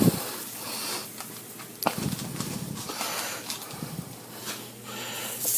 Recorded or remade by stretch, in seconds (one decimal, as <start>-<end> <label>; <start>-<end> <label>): 0.0-5.6 recorded